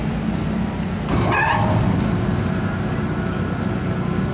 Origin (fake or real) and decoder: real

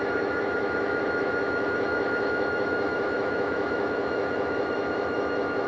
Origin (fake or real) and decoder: fake, autoencoder, DAC-VAE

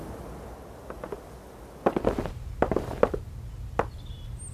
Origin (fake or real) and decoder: real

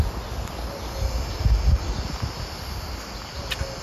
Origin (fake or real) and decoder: real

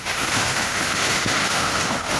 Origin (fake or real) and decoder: fake, autoencoder, DAC-VAE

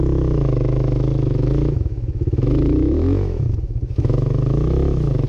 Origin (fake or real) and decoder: fake, autoencoder, DAC-VAE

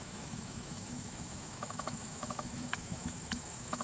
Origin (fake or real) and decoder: fake, autoencoder, DAC-VAE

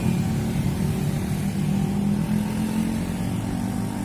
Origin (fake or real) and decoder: real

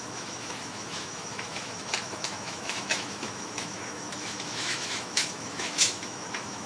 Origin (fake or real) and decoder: fake, autoencoder, DAC-VAE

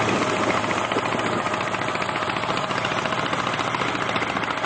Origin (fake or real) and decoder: real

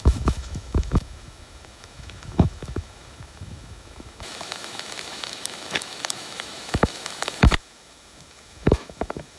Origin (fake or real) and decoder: fake, autoencoder, DAC-VAE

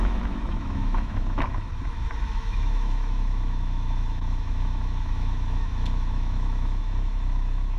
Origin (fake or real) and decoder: fake, autoencoder, DAC-VAE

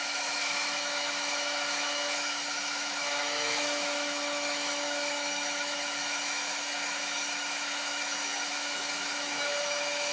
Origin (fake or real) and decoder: fake, autoencoder, DAC-VAE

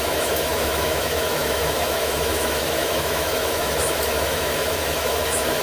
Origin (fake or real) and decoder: fake, autoencoder, DAC-VAE